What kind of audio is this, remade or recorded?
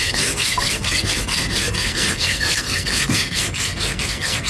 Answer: remade